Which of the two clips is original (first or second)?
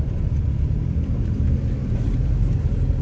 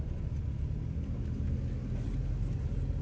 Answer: second